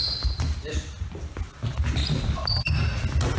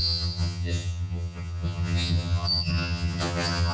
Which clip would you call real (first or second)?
first